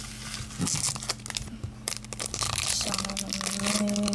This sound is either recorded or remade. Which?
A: recorded